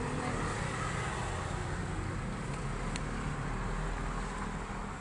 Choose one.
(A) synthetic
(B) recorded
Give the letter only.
B